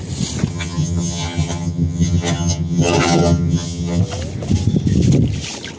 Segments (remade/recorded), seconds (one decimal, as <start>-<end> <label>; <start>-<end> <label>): 0.0-0.5 recorded; 0.5-4.0 remade; 4.0-5.8 recorded